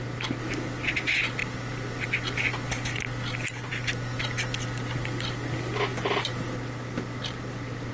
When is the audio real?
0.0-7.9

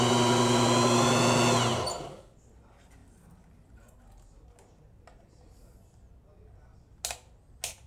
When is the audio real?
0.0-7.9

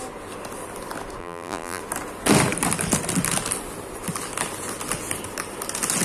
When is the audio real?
0.0-1.2; 1.8-6.0

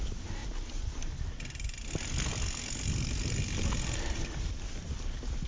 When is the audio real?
0.0-5.5

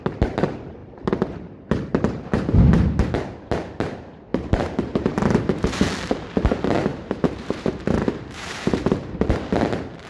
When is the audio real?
0.0-4.3; 5.8-6.9; 9.3-10.1